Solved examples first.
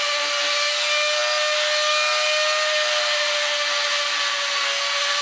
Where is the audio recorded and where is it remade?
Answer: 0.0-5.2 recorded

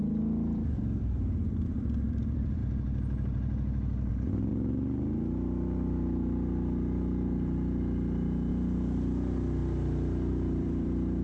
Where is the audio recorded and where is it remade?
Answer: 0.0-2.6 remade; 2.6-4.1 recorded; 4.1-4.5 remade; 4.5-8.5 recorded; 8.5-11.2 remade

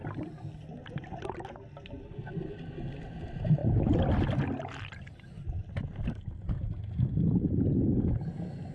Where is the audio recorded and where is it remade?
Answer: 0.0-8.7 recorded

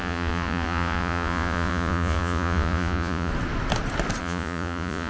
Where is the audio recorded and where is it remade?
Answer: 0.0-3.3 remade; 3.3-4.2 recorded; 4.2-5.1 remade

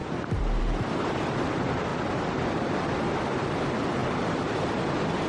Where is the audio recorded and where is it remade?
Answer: 0.0-5.3 recorded

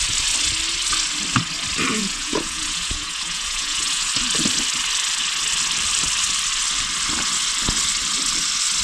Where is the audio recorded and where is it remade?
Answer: 0.0-1.9 recorded; 1.9-4.1 remade; 4.1-8.8 recorded